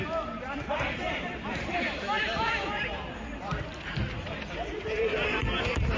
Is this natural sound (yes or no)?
yes